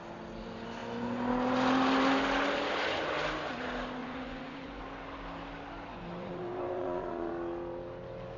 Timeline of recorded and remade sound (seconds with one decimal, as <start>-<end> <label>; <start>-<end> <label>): 0.0-4.0 recorded; 4.0-4.8 remade; 4.8-5.9 recorded; 5.9-7.3 remade; 7.3-8.4 recorded